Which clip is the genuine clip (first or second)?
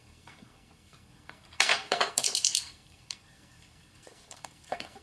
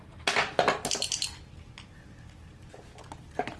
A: second